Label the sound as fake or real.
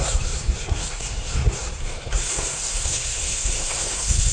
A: fake